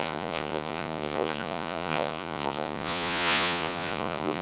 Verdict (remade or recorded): remade